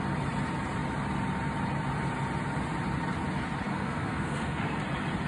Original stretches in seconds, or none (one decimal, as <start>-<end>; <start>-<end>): 0.0-3.7; 4.8-5.3